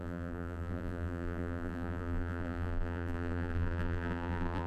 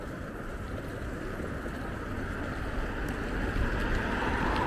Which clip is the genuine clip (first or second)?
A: second